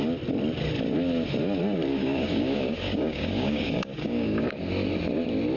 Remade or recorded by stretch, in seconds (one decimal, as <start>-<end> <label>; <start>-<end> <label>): 0.0-1.9 recorded; 1.9-4.6 remade; 4.6-5.6 recorded